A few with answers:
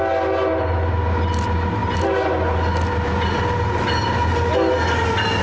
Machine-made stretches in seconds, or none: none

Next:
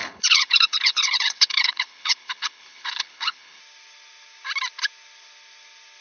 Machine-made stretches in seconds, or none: 0.0-3.6 (codec, HILCodec)

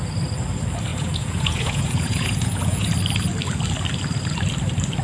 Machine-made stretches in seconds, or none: 0.9-2.9 (vocoder, Vocos)

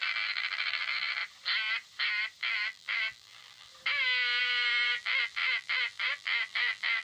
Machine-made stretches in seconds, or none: 0.0-1.2 (vocoder, BigVGAN v2); 2.4-3.7; 4.4-7.0